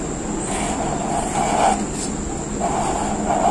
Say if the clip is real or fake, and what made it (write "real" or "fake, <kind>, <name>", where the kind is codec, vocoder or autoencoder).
real